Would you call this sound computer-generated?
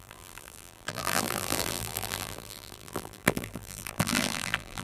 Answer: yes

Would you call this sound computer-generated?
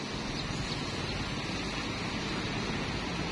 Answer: no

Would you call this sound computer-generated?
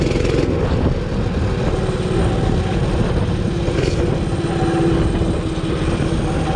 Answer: no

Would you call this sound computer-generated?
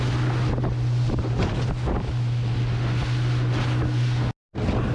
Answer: no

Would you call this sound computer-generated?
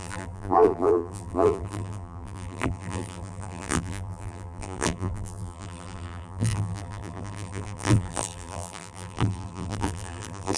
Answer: yes